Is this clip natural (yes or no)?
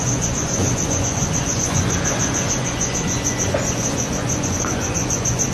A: no